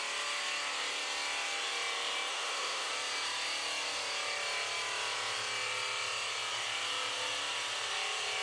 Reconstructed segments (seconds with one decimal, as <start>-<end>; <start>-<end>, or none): 2.3-2.9